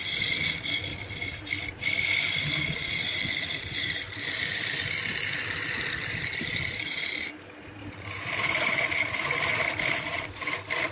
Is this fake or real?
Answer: real